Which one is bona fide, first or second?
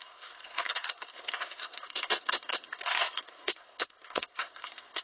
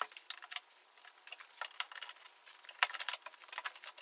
second